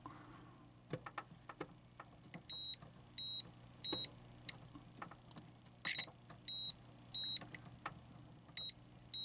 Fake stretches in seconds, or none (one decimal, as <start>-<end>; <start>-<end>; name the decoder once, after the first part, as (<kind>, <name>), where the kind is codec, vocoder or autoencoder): none